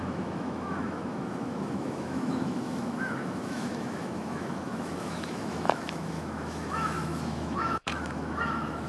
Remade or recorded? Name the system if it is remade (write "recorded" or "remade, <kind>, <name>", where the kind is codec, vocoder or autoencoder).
remade, autoencoder, DAC-VAE